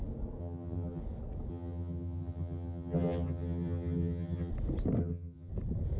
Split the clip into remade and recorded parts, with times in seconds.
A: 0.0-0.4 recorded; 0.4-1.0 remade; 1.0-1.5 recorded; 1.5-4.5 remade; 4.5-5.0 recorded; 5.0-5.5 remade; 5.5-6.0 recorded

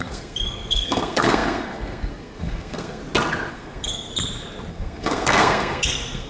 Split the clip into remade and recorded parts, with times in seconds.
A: 0.0-3.0 remade; 3.0-3.5 recorded; 3.5-4.1 remade; 4.1-4.7 recorded; 4.7-6.3 remade

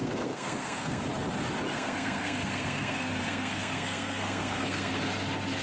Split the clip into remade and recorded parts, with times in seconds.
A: 0.0-1.0 remade; 1.0-1.7 recorded; 1.7-5.1 remade; 5.1-5.6 recorded

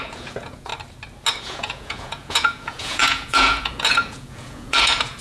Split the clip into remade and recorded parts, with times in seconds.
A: 0.0-0.7 remade; 0.7-1.4 recorded; 1.4-5.2 remade